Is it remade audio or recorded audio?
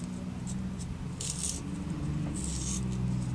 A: recorded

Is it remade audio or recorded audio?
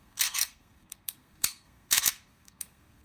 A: remade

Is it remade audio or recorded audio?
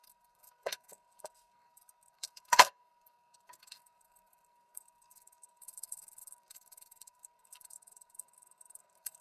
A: remade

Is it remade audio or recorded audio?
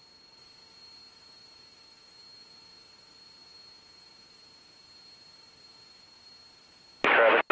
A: recorded